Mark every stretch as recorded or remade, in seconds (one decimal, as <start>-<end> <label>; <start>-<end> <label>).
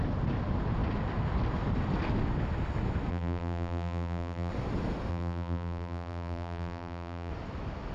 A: 0.0-3.1 recorded; 3.1-4.5 remade; 4.5-5.1 recorded; 5.1-7.3 remade; 7.3-7.9 recorded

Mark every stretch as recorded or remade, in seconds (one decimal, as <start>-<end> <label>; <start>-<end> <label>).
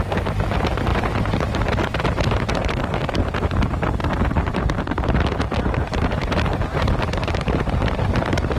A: 0.0-8.6 remade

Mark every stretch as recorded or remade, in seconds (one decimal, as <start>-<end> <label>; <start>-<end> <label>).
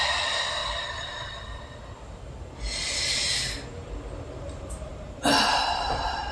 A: 0.0-0.6 remade; 0.6-4.4 recorded; 4.4-6.3 remade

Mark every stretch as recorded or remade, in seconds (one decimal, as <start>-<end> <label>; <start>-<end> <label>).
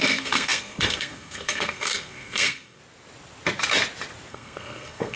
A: 0.0-2.8 remade; 2.8-4.3 recorded; 4.3-5.2 remade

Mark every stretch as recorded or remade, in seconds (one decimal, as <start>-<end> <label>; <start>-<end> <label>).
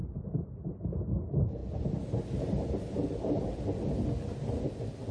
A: 0.0-5.1 recorded